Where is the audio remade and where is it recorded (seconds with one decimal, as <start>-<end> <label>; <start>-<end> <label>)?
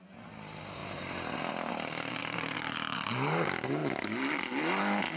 0.0-0.8 recorded; 0.8-1.4 remade; 1.4-2.2 recorded; 2.2-3.1 remade; 3.1-5.2 recorded